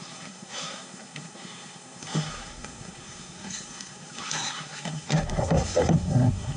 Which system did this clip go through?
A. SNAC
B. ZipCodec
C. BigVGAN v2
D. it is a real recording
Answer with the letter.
A